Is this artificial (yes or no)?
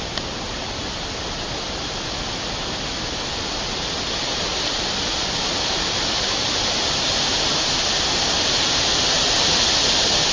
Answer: no